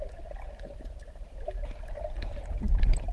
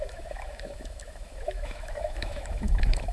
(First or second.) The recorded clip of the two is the first